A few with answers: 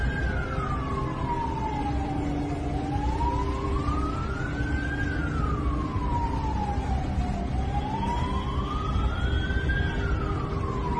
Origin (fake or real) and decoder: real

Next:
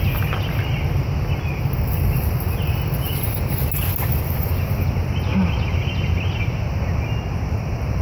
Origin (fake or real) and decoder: real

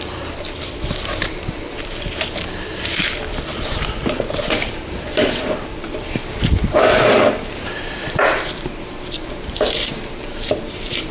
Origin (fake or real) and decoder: fake, vocoder, BigVGAN v2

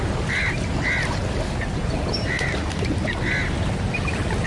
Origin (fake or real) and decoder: real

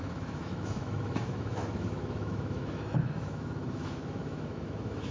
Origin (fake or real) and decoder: fake, autoencoder, DAC-VAE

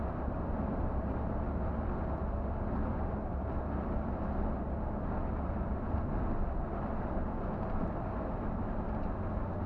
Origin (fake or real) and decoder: real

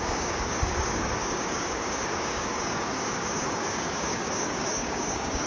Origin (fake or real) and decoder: fake, codec, DAC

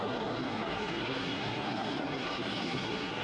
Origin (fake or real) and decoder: fake, codec, SNAC